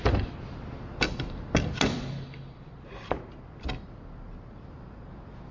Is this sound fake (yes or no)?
no